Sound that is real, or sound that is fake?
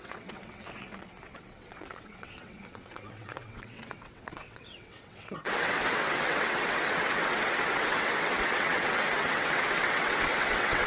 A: fake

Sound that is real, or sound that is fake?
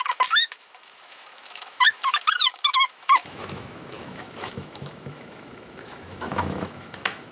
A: fake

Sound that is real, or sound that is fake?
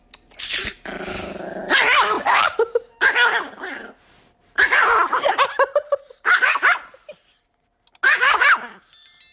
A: real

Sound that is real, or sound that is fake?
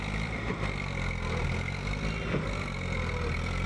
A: fake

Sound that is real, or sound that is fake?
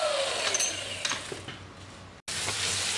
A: real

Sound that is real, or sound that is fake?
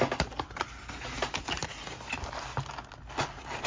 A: real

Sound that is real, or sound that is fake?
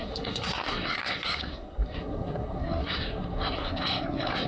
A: fake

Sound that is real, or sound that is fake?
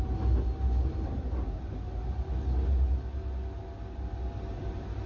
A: real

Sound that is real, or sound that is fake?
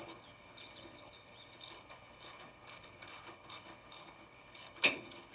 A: fake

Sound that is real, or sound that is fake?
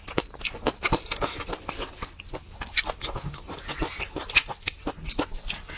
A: real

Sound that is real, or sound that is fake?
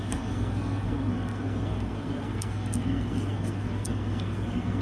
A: fake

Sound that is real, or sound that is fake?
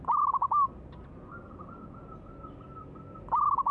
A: real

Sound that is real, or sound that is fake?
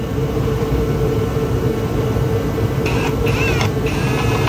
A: real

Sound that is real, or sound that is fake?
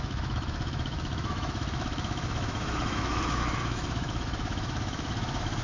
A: fake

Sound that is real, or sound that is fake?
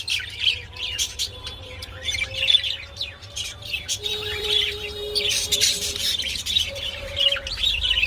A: fake